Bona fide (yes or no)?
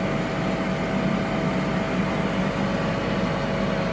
yes